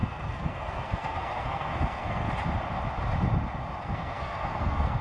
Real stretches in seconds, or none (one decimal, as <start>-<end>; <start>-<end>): 2.3-3.8